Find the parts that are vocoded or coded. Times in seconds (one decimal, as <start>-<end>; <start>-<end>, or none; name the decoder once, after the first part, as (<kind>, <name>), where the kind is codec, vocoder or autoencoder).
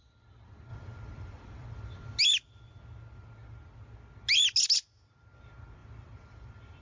0.7-2.2 (vocoder, BigVGAN v2); 5.8-6.8